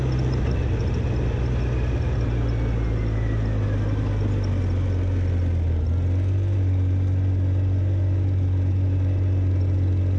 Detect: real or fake real